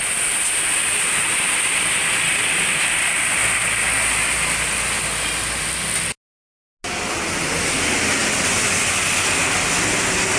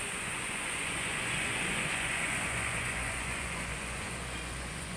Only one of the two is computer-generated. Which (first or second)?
second